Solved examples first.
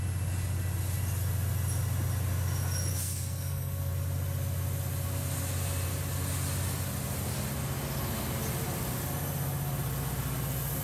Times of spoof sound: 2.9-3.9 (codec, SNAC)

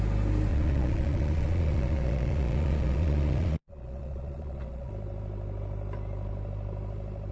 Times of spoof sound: 0.5-4.9 (vocoder, Vocos)

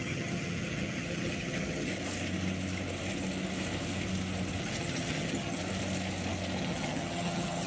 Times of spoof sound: 0.0-1.9 (vocoder, HiFi-GAN); 4.6-5.6; 6.6-7.7

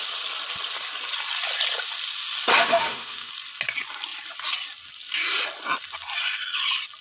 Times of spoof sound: 2.5-3.3 (autoencoder, DAC-VAE)

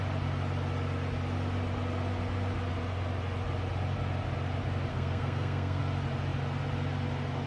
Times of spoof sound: 4.9-5.8 (codec, SNAC)

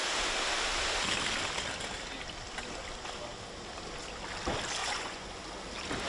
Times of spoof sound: 4.8-5.4 (vocoder, Vocos)

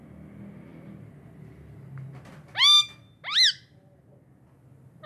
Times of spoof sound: none

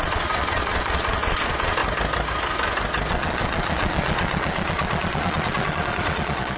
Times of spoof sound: 0.0-1.8 (vocoder, Vocos); 3.1-6.6